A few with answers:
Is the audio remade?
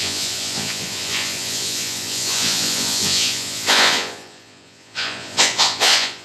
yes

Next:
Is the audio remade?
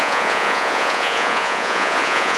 yes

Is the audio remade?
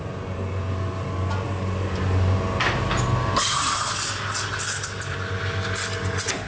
no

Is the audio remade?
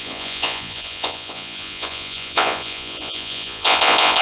yes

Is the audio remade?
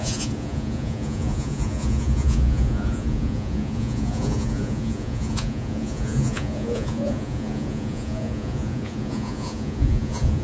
yes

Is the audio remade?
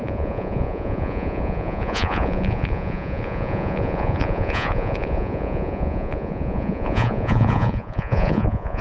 yes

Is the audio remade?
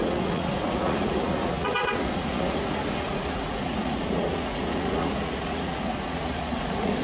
yes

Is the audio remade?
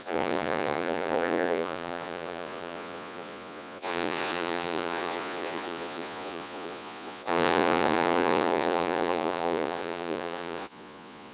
yes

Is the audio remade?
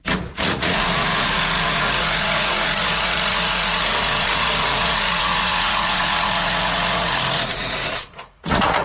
yes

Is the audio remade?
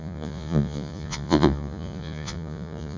yes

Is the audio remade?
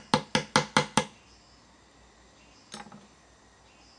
no